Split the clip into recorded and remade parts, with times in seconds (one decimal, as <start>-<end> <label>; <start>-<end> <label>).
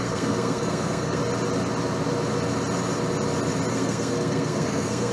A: 0.0-1.2 remade; 1.2-3.7 recorded; 3.7-5.1 remade